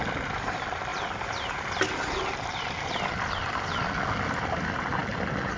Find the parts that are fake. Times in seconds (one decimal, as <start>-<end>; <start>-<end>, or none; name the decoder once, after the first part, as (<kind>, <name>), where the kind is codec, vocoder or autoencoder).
none